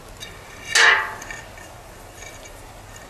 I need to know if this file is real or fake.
real